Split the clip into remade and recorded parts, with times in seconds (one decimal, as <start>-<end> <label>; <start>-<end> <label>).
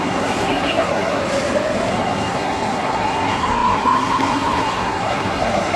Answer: 0.0-1.2 remade; 1.2-1.9 recorded; 1.9-5.8 remade